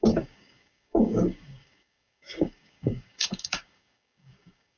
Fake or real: fake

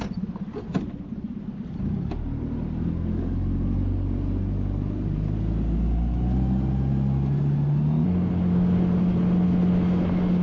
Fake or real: real